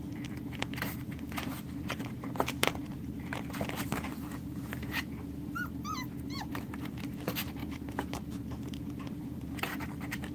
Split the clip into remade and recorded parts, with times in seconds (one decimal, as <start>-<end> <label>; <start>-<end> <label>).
0.0-10.3 remade